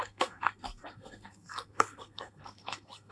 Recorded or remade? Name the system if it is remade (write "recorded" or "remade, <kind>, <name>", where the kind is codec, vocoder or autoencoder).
remade, codec, SNAC